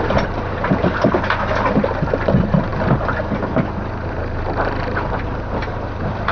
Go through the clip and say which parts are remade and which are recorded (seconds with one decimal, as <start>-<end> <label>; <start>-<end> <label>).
0.0-6.3 remade